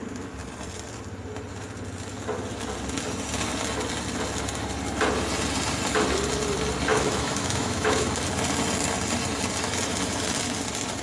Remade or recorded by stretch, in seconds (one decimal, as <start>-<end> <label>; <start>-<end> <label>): 0.0-6.9 recorded; 6.9-8.1 remade; 8.1-11.0 recorded